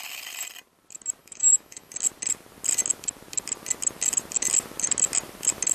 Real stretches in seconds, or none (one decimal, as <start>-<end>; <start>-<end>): 0.0-1.2; 1.9-5.7